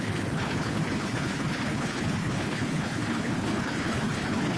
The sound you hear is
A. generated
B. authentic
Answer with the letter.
A